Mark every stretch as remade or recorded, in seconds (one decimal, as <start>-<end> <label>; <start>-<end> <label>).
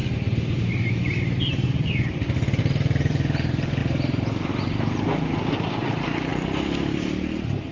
0.0-3.8 remade; 3.8-4.5 recorded; 4.5-5.1 remade; 5.1-5.6 recorded; 5.6-7.7 remade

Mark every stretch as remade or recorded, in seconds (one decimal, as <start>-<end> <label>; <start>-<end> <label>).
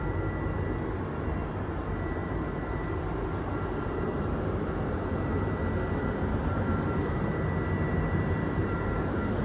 0.0-2.2 recorded; 2.2-5.6 remade; 5.6-6.0 recorded; 6.0-7.3 remade; 7.3-7.9 recorded; 7.9-9.4 remade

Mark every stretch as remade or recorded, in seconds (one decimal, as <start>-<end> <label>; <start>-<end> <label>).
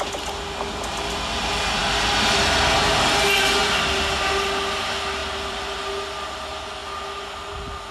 0.0-5.2 recorded; 5.2-5.9 remade; 5.9-7.9 recorded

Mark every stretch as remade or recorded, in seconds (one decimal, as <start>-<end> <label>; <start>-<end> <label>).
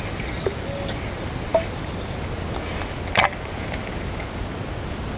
0.0-5.2 recorded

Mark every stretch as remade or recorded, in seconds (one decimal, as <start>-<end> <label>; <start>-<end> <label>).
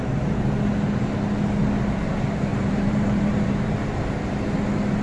0.0-2.5 recorded; 2.5-4.1 remade; 4.1-5.0 recorded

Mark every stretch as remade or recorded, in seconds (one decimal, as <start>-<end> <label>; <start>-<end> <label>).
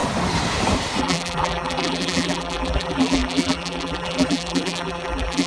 0.0-1.0 recorded; 1.0-5.5 remade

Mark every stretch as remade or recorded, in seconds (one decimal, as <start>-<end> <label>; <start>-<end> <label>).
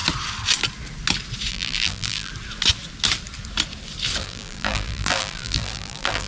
0.0-1.5 recorded; 1.5-2.3 remade; 2.3-4.2 recorded; 4.2-6.3 remade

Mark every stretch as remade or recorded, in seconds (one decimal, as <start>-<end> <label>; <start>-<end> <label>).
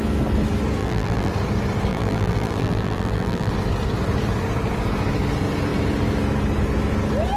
0.0-0.8 recorded; 0.8-1.3 remade; 1.3-1.9 recorded; 1.9-3.5 remade; 3.5-7.4 recorded